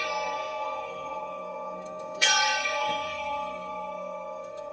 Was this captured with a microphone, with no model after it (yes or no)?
no